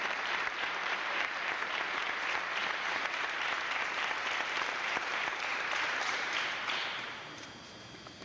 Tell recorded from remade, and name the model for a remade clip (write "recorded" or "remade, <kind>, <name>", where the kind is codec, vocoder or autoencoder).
remade, vocoder, BigVGAN v2